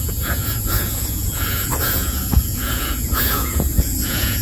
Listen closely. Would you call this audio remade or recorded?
remade